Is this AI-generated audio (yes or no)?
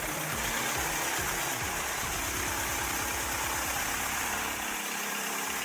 no